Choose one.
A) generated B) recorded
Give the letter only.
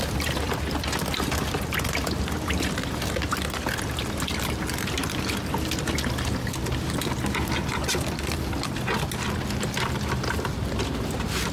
B